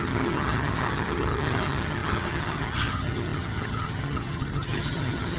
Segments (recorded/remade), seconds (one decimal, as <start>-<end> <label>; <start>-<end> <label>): 0.0-5.4 remade

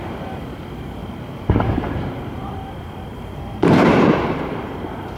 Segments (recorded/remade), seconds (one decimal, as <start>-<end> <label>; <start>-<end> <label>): 0.0-1.0 recorded; 1.0-2.3 remade; 2.3-3.1 recorded; 3.1-4.7 remade; 4.7-5.2 recorded

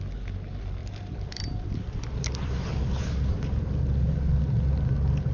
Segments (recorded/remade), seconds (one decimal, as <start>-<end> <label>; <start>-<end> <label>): 0.0-0.8 recorded; 0.8-4.0 remade; 4.0-5.3 recorded

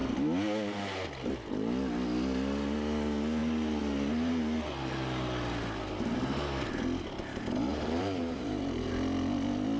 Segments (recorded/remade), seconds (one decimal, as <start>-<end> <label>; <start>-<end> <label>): 0.0-7.7 recorded; 7.7-8.9 remade; 8.9-9.8 recorded

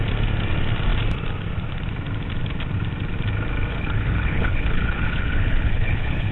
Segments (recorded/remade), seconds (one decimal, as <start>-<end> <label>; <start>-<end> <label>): 0.0-3.7 recorded; 3.7-6.3 remade

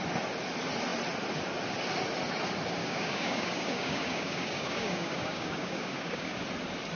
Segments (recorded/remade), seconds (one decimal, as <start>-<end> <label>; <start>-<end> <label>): 0.0-2.8 recorded; 2.8-6.4 remade; 6.4-7.0 recorded

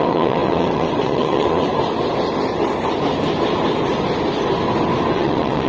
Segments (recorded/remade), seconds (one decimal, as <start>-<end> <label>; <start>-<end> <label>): 0.0-1.7 remade; 1.7-5.1 recorded; 5.1-5.7 remade